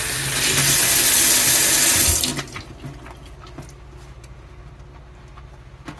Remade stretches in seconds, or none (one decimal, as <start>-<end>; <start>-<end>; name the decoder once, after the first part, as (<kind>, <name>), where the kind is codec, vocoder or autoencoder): none